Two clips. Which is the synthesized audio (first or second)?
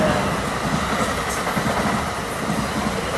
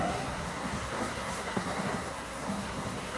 second